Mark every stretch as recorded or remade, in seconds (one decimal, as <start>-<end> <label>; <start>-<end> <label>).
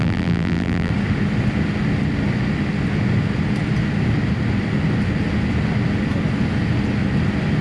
0.0-0.9 remade; 0.9-7.6 recorded